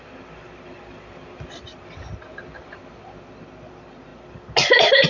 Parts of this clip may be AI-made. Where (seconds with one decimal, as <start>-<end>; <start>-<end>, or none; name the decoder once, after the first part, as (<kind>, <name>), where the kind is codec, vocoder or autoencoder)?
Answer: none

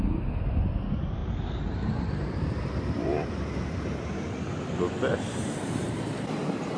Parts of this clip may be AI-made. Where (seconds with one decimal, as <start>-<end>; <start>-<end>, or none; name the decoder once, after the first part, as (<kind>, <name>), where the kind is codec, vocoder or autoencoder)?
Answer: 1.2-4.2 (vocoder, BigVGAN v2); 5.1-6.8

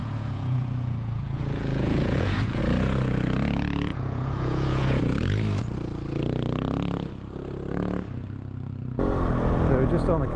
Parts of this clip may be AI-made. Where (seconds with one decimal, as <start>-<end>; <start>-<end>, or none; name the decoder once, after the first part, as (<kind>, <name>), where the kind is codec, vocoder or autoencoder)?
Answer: 0.0-2.6 (vocoder, Vocos); 3.9-5.0

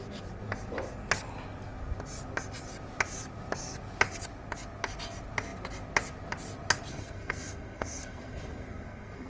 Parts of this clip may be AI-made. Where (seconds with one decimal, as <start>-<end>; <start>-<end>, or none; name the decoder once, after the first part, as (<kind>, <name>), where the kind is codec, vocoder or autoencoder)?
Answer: 6.9-9.3 (codec, SNAC)

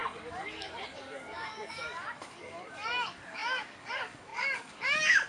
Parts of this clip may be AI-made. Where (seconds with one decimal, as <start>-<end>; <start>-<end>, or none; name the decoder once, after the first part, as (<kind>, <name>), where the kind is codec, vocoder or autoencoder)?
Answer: 0.0-5.3 (codec, DAC)

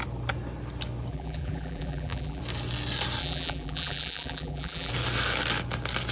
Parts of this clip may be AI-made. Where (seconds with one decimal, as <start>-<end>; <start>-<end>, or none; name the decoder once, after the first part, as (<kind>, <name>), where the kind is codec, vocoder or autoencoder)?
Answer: 1.1-2.4 (vocoder, BigVGAN v2); 3.2-4.9

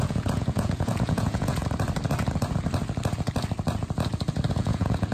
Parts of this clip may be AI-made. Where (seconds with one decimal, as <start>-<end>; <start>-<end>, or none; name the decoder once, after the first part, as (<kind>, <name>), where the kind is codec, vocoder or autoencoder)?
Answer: 0.0-1.6 (vocoder, Vocos); 4.5-5.1